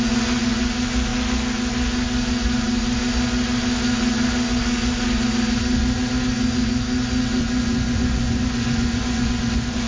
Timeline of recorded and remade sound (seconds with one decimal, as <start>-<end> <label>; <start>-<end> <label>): 0.0-7.4 recorded; 7.4-9.9 remade